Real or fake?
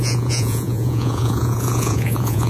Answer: fake